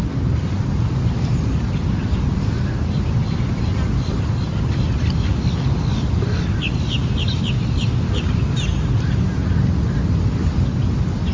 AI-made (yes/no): no